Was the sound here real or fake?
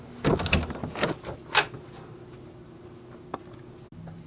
real